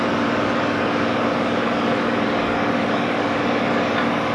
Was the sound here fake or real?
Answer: fake